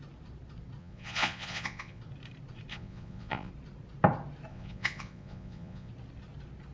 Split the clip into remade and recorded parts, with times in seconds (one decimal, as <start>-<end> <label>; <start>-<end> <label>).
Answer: 0.0-0.8 recorded; 0.8-2.0 remade; 2.0-2.7 recorded; 2.7-3.5 remade; 3.5-4.5 recorded; 4.5-5.9 remade; 5.9-6.7 recorded